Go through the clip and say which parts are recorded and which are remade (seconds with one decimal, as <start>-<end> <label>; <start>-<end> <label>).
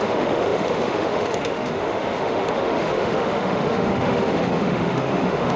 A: 0.0-5.6 remade